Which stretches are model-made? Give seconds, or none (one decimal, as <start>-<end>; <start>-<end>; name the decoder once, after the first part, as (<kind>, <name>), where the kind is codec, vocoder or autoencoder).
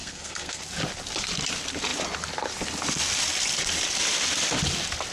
0.0-0.6 (codec, SNAC)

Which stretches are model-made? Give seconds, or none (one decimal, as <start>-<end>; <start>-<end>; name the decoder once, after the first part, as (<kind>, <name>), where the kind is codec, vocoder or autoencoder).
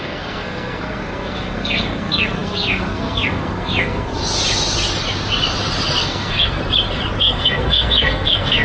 0.0-4.1 (codec, SNAC); 6.0-6.6; 7.2-8.6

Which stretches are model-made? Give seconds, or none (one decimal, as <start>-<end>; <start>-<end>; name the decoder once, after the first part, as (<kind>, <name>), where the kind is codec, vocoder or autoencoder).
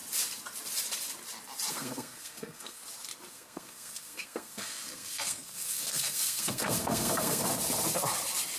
1.7-2.8 (codec, SNAC); 3.3-7.4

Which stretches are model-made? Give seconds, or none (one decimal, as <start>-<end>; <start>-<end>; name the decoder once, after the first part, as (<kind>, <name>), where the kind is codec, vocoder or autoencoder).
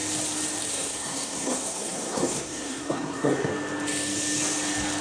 0.7-3.5 (codec, SNAC)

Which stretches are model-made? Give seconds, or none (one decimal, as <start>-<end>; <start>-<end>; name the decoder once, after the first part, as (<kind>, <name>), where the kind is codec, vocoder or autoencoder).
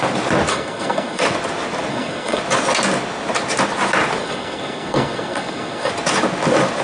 0.5-1.2 (codec, SNAC); 1.9-2.4; 4.2-5.9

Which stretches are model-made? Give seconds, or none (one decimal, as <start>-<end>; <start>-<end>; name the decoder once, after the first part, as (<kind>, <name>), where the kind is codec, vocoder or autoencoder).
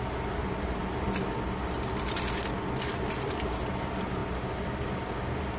none